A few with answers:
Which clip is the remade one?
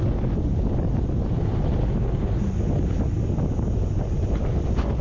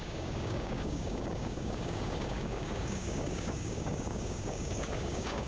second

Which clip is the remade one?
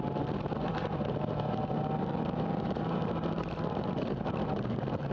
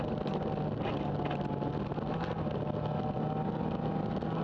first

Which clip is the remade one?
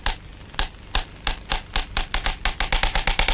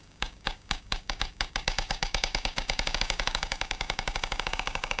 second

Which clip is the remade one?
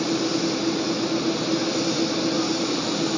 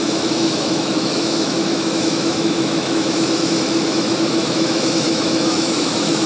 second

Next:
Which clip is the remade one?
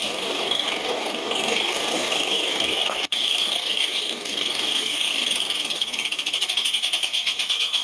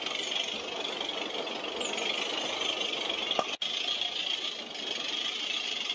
first